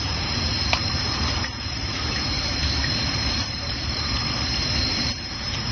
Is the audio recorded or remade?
remade